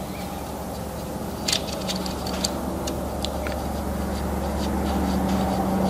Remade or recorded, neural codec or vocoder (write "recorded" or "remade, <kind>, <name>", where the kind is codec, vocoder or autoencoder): recorded